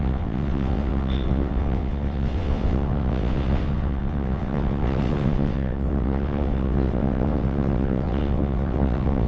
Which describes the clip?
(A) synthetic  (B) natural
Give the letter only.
A